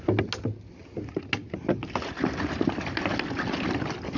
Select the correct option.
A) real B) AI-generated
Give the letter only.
A